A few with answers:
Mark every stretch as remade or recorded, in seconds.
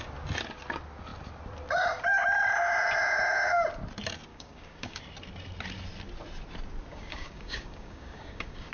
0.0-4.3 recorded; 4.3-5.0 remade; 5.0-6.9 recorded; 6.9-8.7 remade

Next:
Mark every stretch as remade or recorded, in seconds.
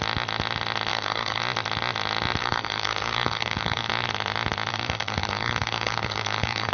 0.0-0.9 recorded; 0.9-1.4 remade; 1.4-2.4 recorded; 2.4-3.9 remade; 3.9-4.7 recorded; 4.7-6.7 remade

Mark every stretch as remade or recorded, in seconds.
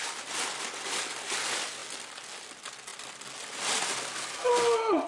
0.0-5.1 recorded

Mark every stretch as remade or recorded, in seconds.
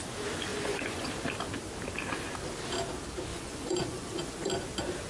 0.0-0.5 recorded; 0.5-1.1 remade; 1.1-3.3 recorded; 3.3-4.5 remade; 4.5-5.1 recorded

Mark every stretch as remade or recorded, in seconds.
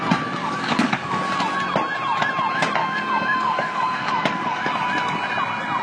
0.0-0.4 recorded; 0.4-1.2 remade; 1.2-2.8 recorded; 2.8-4.7 remade; 4.7-5.8 recorded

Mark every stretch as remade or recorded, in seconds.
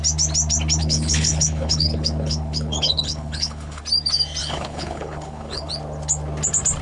0.0-0.8 recorded; 0.8-3.8 remade; 3.8-4.4 recorded; 4.4-5.7 remade; 5.7-6.8 recorded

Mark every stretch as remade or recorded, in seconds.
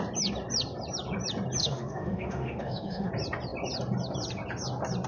0.0-1.6 recorded; 1.6-3.1 remade; 3.1-5.1 recorded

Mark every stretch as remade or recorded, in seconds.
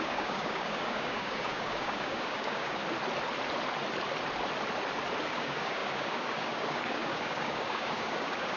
0.0-2.8 remade; 2.8-5.2 recorded; 5.2-8.6 remade